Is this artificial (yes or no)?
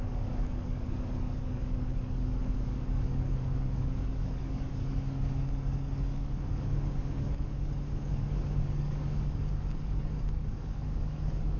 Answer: yes